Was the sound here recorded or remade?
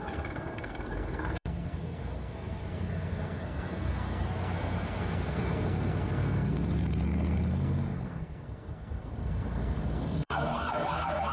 remade